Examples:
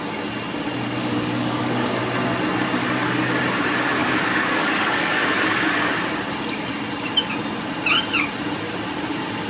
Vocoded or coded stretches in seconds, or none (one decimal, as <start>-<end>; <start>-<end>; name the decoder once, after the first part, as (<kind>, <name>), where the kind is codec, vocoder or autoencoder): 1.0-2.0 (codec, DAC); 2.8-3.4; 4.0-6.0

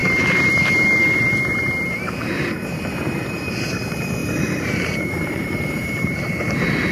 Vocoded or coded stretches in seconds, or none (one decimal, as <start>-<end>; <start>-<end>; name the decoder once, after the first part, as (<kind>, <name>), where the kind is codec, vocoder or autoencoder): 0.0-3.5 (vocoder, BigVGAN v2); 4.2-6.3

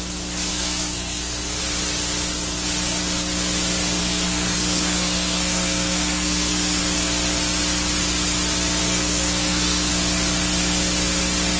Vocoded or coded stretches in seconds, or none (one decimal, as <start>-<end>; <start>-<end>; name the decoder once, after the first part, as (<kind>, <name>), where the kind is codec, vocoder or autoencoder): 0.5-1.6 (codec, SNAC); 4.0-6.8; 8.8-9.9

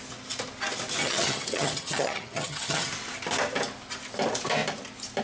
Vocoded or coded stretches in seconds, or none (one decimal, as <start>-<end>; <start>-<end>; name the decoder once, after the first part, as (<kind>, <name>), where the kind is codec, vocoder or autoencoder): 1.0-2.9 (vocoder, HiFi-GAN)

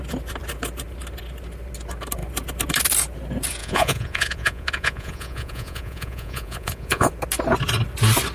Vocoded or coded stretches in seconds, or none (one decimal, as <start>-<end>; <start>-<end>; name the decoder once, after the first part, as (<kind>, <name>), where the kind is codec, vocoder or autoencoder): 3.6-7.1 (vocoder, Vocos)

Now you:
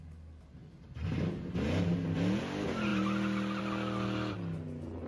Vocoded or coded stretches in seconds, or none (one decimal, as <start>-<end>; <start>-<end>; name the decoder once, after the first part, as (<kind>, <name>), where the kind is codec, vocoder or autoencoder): none

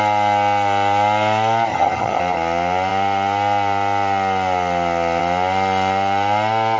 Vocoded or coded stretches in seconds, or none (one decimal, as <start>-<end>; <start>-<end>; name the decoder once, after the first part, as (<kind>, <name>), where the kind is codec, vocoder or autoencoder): 1.7-2.2 (vocoder, HiFi-GAN)